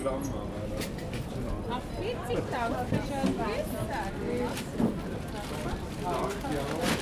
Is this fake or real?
real